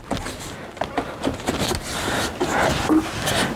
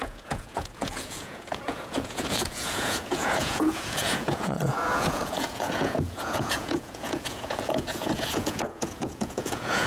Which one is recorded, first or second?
first